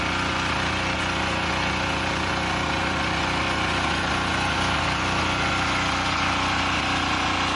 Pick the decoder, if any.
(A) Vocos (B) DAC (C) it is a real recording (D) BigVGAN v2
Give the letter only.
A